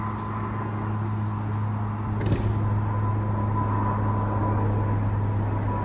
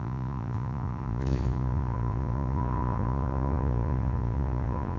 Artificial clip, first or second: second